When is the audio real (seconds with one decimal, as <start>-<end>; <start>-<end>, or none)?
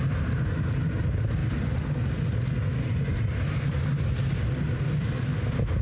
0.0-5.8